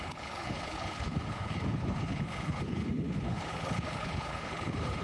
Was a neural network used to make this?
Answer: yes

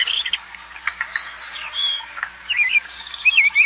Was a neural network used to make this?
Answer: yes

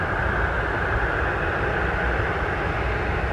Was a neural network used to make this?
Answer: no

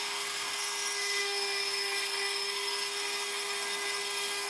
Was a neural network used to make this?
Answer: yes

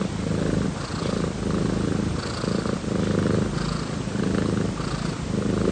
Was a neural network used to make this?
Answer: no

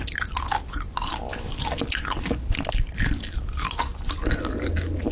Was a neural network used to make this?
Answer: no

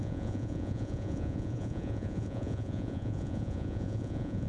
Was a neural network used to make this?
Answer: yes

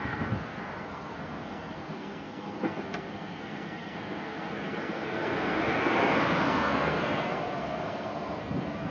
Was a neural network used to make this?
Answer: yes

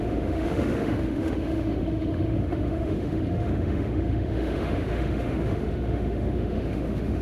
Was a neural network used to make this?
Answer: yes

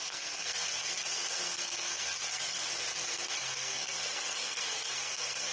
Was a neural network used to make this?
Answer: yes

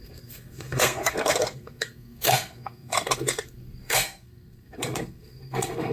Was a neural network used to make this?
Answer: yes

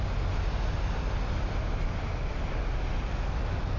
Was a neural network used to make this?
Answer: no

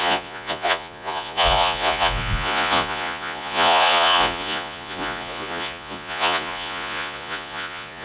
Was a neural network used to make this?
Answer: yes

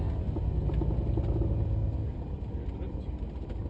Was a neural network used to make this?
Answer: no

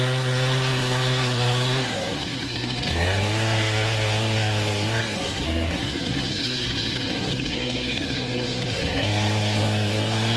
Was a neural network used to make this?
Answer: yes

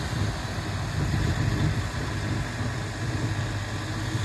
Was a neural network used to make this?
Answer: no